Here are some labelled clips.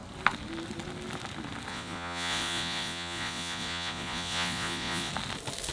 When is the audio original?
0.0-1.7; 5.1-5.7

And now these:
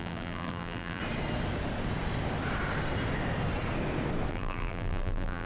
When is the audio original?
1.0-4.3

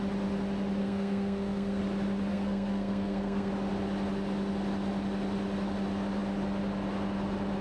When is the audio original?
0.0-0.8; 1.8-2.3; 3.5-7.6

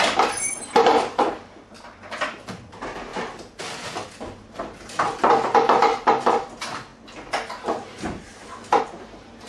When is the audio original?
3.1-3.6; 6.9-8.8